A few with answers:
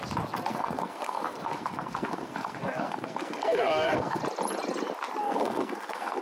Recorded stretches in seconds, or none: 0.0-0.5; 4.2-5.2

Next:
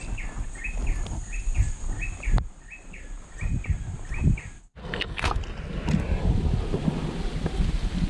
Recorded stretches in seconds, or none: 0.0-4.8; 5.4-8.1

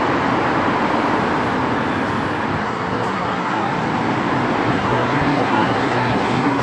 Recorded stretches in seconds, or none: 0.0-2.6; 3.7-4.7